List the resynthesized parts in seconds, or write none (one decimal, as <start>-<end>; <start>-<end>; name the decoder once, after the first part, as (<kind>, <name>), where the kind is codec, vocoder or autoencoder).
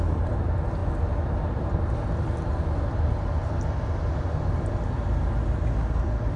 none